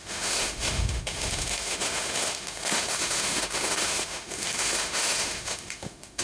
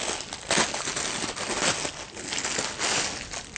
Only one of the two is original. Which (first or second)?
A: second